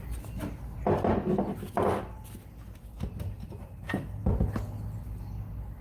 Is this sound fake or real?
real